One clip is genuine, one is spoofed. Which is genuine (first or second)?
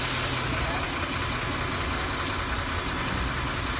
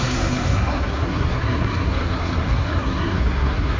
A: first